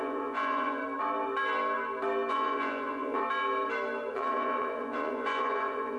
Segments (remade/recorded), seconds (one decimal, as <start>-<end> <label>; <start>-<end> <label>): 0.0-0.8 remade; 0.8-2.3 recorded; 2.3-3.2 remade; 3.2-4.1 recorded; 4.1-6.0 remade